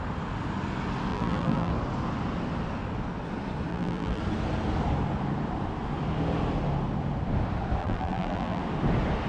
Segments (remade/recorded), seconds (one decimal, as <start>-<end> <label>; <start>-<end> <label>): 0.0-1.1 recorded; 1.1-1.7 remade; 1.7-3.7 recorded; 3.7-4.2 remade; 4.2-7.8 recorded; 7.8-8.6 remade; 8.6-9.3 recorded